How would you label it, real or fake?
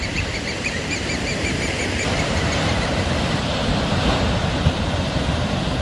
fake